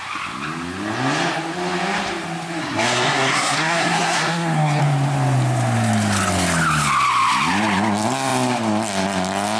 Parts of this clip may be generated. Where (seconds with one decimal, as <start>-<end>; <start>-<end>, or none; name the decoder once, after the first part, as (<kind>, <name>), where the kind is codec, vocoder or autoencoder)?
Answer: 2.6-4.8 (codec, SNAC)